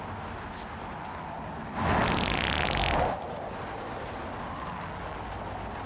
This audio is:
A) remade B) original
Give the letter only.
B